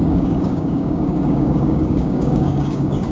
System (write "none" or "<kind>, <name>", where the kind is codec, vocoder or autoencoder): codec, DAC